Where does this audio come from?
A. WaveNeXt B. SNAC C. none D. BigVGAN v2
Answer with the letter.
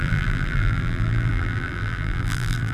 D